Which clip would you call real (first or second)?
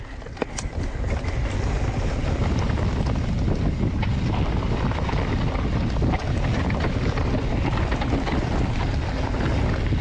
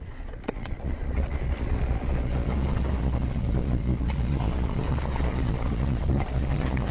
first